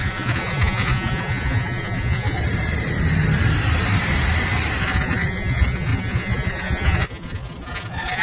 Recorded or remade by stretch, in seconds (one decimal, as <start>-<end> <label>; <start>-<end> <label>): 0.0-2.4 remade; 2.4-4.8 recorded; 4.8-8.2 remade